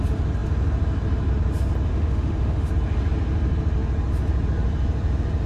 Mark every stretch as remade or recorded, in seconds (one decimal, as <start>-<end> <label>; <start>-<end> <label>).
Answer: 0.0-1.9 recorded; 1.9-2.7 remade; 2.7-5.5 recorded